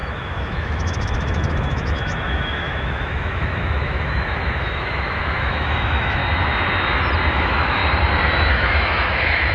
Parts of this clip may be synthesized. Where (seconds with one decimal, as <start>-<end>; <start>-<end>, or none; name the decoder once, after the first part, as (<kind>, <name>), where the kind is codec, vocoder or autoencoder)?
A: 0.0-6.2 (autoencoder, DAC-VAE); 7.3-7.8; 8.5-9.5